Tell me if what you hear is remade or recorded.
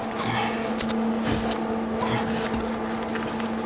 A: recorded